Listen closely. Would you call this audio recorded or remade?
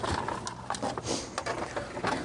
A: recorded